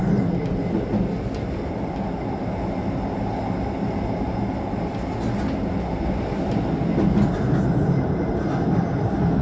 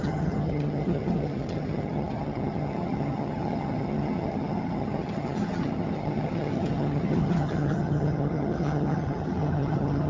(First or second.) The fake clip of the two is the second